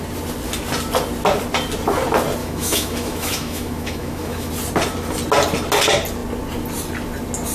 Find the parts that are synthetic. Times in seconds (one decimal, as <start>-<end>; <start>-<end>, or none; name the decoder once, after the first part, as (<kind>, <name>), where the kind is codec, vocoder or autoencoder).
2.4-4.5 (autoencoder, DAC-VAE)